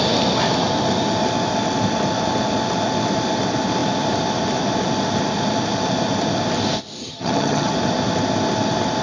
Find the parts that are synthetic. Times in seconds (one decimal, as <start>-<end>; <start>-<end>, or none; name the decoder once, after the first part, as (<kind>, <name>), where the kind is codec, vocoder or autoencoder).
7.0-7.7 (vocoder, HiFi-GAN)